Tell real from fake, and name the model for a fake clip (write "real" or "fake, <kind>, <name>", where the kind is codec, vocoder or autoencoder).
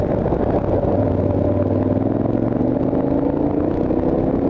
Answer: real